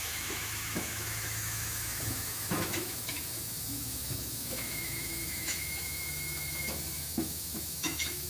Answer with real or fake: fake